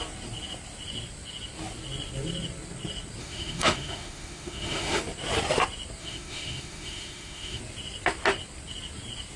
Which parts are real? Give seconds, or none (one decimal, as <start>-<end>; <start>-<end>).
0.0-3.2; 5.0-6.0; 7.6-9.4